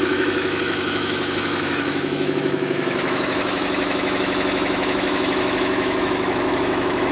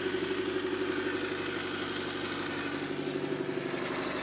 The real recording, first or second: second